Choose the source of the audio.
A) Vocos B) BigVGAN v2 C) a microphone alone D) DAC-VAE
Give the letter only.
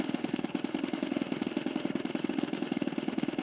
D